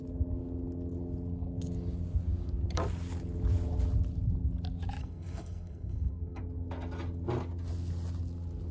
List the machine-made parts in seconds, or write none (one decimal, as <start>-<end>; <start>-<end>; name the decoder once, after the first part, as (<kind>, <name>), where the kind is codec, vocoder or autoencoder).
5.0-6.4 (codec, SNAC)